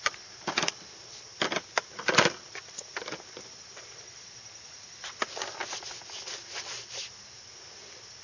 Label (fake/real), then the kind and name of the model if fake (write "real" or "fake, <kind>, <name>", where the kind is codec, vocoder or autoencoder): real